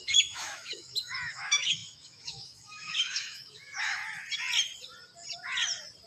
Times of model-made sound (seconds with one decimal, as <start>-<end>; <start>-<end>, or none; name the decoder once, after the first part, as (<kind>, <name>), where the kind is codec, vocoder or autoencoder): 0.0-4.0 (autoencoder, DAC-VAE)

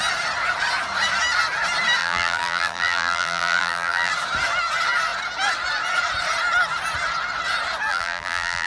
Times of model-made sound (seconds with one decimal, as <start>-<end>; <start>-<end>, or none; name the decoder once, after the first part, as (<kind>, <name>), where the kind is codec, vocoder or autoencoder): 2.0-4.1 (vocoder, BigVGAN v2); 7.9-8.7

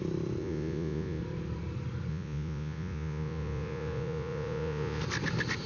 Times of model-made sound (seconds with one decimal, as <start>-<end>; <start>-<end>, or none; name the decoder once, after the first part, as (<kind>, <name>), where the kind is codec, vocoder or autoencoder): 0.4-1.2 (vocoder, Vocos); 2.1-5.0

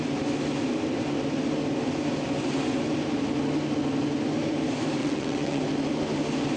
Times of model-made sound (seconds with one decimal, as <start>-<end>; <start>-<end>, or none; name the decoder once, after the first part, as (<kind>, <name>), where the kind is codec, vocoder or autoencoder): 5.0-5.6 (vocoder, WaveNeXt)